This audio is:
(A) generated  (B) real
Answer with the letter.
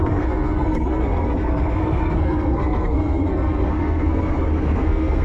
A